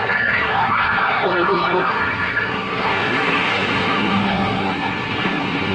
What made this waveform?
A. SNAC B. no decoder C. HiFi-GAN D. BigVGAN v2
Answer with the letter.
A